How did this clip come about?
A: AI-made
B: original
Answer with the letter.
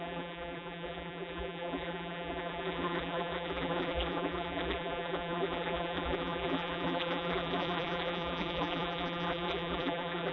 A